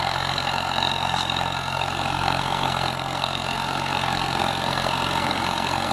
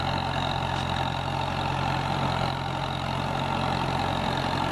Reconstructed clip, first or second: first